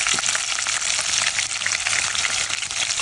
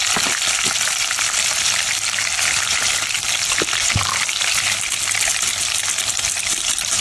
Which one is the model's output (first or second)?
second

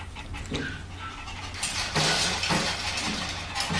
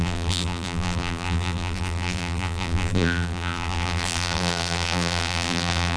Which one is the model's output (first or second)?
second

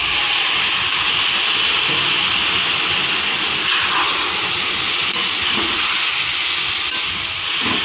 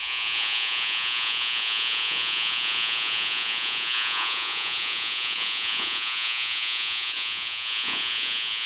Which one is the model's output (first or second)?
second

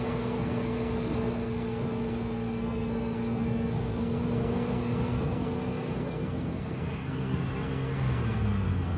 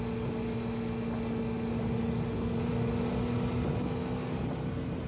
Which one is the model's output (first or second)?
first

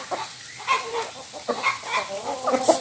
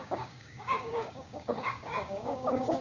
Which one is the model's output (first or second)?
second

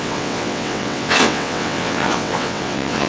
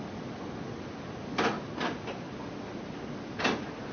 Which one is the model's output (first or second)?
first